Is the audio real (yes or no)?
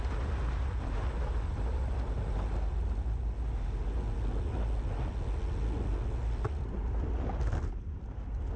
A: yes